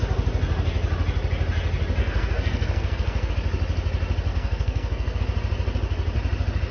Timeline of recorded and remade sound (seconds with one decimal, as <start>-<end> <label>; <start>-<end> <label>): 0.0-2.0 recorded; 2.0-3.3 remade; 3.3-4.3 recorded; 4.3-5.2 remade; 5.2-6.7 recorded